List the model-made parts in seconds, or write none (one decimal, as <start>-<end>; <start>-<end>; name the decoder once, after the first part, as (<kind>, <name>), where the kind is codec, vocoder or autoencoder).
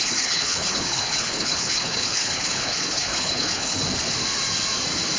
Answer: 0.0-3.8 (codec, HILCodec)